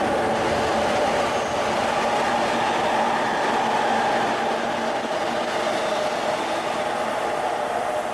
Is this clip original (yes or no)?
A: yes